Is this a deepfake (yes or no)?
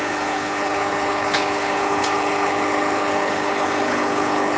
yes